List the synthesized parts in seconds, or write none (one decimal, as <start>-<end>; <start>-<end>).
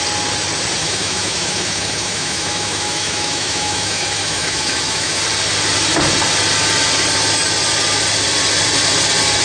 0.8-5.2